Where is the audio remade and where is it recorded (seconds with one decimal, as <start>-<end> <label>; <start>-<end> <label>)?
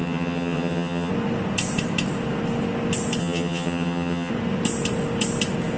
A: 0.0-1.1 remade; 1.1-3.2 recorded; 3.2-4.3 remade; 4.3-5.8 recorded